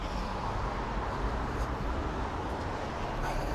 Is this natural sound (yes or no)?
no